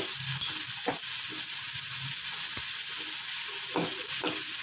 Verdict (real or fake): real